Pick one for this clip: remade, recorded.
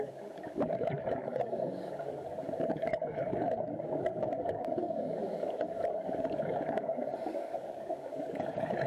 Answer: remade